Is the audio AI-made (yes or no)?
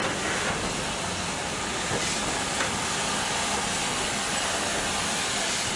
no